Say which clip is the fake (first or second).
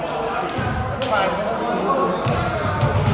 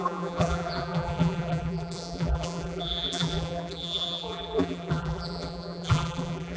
second